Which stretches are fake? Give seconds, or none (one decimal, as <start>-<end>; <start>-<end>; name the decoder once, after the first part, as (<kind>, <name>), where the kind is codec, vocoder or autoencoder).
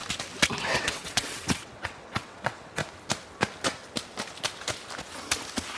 0.6-2.8 (vocoder, WaveNeXt)